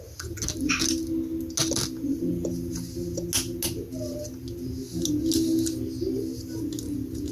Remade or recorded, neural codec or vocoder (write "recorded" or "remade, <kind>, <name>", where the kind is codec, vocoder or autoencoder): recorded